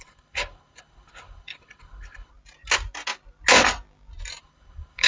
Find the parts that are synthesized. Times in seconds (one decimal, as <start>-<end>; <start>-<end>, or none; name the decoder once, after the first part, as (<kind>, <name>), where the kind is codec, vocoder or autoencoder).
0.0-2.3 (codec, HILCodec); 4.4-5.1